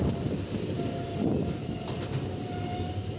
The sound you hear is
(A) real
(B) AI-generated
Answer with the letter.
A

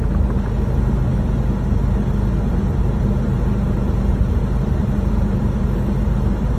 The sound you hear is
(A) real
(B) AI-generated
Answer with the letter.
A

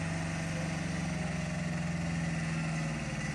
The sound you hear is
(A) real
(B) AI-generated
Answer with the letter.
A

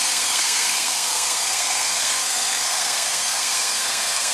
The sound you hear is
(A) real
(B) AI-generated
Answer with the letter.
B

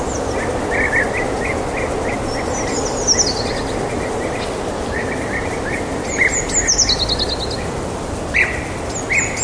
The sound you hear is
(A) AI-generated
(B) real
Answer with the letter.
B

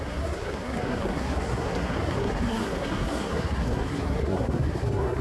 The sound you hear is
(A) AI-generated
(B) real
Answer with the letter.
A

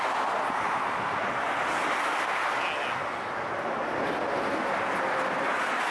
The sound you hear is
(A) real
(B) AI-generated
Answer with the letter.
A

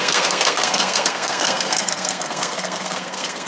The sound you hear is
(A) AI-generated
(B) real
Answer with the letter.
A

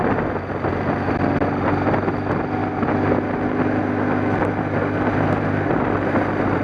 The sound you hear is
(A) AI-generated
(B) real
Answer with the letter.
B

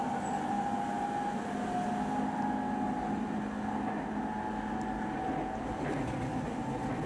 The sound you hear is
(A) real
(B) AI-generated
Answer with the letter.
A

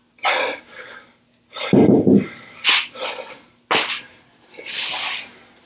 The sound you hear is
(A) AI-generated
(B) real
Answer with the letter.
B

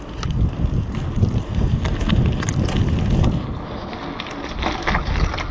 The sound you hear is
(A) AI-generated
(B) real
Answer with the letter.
B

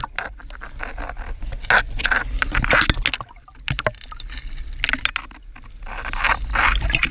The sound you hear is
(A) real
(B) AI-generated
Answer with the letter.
A